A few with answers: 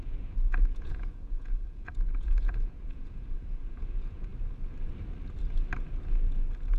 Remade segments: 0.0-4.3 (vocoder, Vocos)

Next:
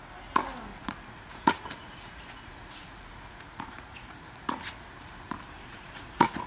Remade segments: 0.7-4.6 (vocoder, Vocos); 5.6-6.5

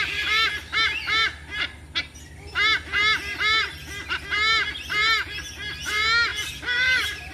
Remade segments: 6.3-7.3 (vocoder, BigVGAN v2)

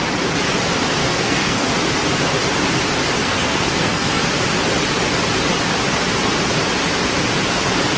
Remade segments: 1.0-1.7 (codec, SNAC); 3.2-4.3

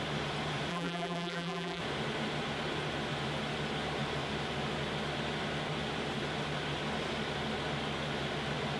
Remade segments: 0.7-1.8 (vocoder, BigVGAN v2)

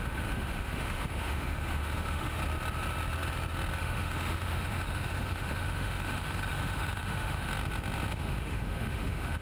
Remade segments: 0.0-2.4 (autoencoder, DAC-VAE); 3.8-7.5; 8.1-9.4

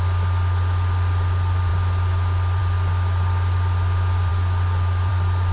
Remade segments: none

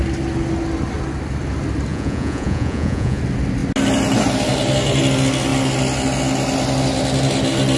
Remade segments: 1.9-3.2 (vocoder, Vocos)